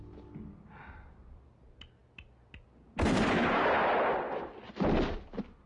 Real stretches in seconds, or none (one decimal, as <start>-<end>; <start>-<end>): 0.0-5.7